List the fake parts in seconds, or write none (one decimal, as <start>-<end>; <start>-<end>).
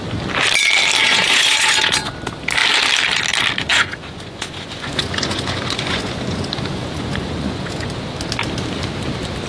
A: 1.0-2.1; 3.7-7.9